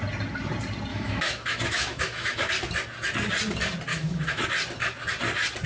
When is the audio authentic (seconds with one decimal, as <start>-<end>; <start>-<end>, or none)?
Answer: 0.0-0.9; 2.5-3.9; 4.4-5.7